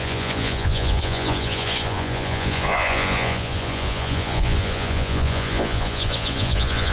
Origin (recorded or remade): remade